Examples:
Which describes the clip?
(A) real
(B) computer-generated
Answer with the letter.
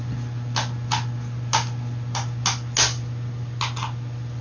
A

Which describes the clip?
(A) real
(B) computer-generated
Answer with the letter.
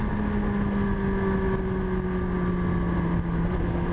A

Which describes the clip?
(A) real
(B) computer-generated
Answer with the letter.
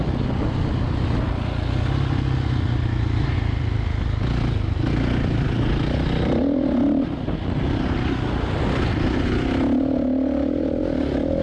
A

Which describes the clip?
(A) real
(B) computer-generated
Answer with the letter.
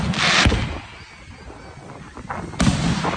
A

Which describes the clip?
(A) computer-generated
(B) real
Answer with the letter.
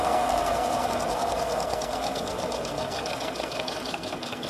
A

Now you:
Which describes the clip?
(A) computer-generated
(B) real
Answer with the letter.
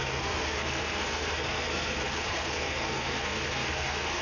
A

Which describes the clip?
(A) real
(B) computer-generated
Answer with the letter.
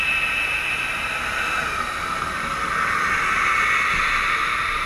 A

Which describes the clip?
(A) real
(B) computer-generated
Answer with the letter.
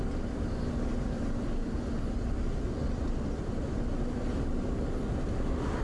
A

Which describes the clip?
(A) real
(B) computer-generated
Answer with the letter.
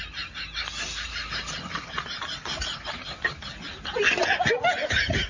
A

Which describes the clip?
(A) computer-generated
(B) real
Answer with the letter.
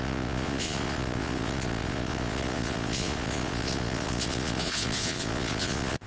A